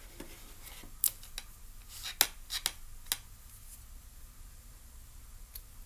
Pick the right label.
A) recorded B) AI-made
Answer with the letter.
A